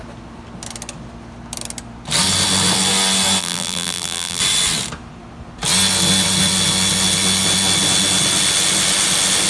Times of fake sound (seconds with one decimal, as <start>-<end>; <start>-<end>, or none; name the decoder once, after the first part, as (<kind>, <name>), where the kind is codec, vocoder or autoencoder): 3.4-4.4 (vocoder, BigVGAN v2)